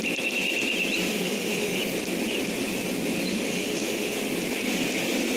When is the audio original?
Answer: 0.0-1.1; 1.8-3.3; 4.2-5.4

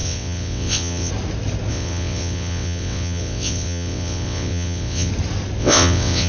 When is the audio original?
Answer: 1.1-1.7; 5.1-5.6

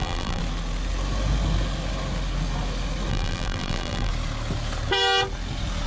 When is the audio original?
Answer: 0.4-3.1; 4.1-5.9

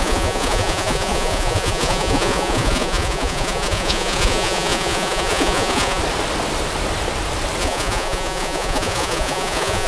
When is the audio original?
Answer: 6.0-7.6

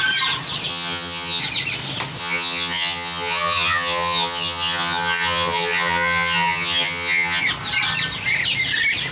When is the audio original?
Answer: 0.0-0.7; 1.4-2.2; 7.4-9.1